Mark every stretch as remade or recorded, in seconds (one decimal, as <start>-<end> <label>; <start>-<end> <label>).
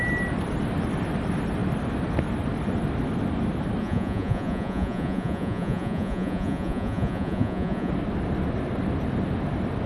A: 0.0-3.8 recorded; 3.8-7.9 remade; 7.9-9.9 recorded